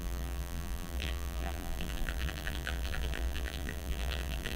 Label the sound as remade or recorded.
remade